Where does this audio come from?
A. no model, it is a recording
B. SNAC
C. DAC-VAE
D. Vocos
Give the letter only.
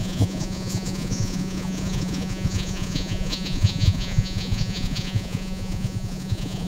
D